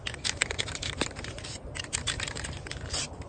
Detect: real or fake fake